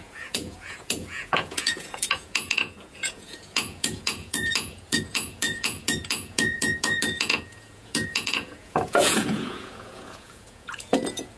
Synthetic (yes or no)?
yes